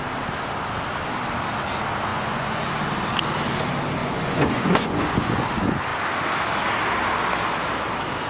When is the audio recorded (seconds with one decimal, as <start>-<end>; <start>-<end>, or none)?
0.0-2.1; 2.7-4.0; 5.4-8.3